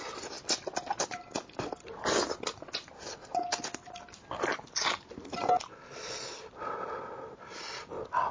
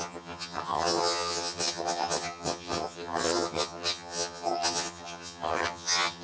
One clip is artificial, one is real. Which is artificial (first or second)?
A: second